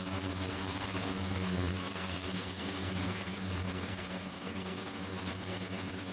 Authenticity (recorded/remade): remade